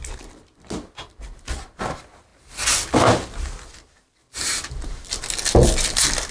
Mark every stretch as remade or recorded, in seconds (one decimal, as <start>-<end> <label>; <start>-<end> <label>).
0.0-6.3 recorded